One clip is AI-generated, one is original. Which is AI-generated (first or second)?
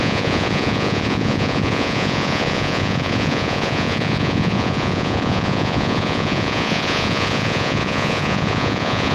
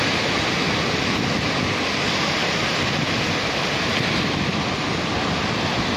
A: first